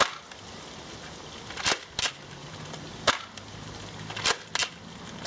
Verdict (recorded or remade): recorded